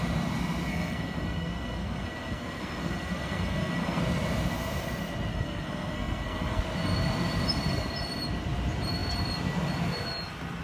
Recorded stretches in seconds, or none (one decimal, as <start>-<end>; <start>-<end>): 0.0-0.7; 4.0-5.3; 6.6-10.6